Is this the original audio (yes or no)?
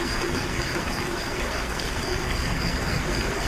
no